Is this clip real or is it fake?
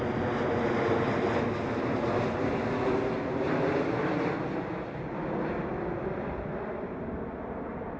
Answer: real